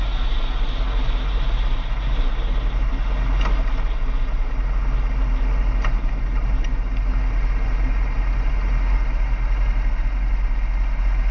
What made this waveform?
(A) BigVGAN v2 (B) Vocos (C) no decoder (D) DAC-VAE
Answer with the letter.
C